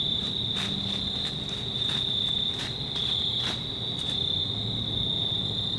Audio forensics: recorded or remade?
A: recorded